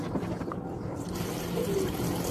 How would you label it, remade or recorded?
recorded